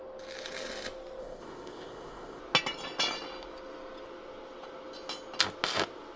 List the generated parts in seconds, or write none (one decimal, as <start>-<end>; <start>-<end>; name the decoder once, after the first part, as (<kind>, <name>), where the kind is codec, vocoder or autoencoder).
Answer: 1.2-2.4 (codec, ZipCodec)